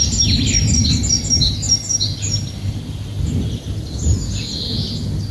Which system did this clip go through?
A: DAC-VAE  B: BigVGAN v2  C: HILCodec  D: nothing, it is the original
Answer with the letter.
D